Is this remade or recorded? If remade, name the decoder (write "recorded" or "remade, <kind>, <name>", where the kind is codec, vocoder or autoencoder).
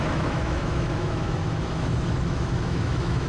remade, autoencoder, DAC-VAE